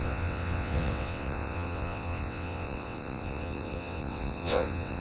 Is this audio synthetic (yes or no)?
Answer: yes